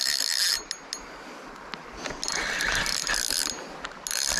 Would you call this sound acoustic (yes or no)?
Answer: yes